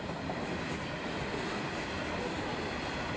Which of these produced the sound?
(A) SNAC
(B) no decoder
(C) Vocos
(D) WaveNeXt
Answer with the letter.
B